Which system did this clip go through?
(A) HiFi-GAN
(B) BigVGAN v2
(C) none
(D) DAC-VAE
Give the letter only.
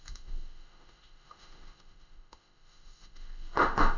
D